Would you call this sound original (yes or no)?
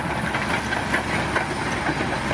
yes